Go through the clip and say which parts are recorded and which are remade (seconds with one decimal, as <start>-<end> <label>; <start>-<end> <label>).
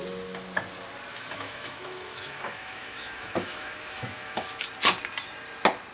0.0-1.1 recorded; 1.1-4.6 remade; 4.6-5.9 recorded